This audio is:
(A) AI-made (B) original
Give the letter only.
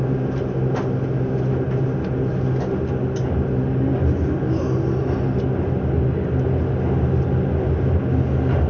B